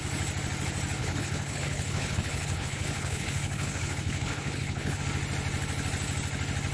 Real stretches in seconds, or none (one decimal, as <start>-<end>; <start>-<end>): 0.0-1.0; 5.0-6.7